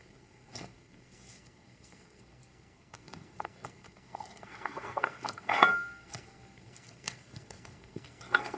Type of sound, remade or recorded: remade